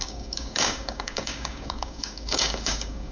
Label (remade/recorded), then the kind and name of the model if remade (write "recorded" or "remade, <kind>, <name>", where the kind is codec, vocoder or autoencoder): remade, codec, DAC